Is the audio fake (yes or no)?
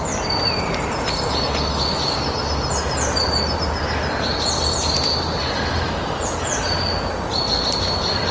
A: no